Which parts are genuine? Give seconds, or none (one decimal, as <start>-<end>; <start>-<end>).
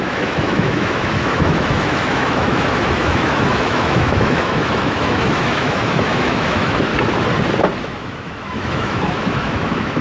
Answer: 6.9-7.8